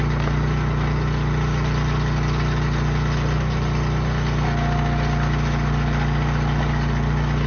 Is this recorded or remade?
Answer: recorded